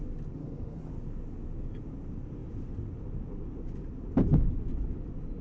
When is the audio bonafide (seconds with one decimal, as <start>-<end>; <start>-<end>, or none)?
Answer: 0.0-0.4; 0.9-5.4